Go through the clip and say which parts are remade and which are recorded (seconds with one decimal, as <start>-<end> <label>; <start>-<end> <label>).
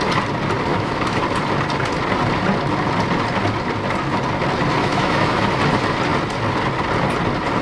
0.0-0.7 recorded; 0.7-1.2 remade; 1.2-4.8 recorded; 4.8-5.5 remade; 5.5-7.6 recorded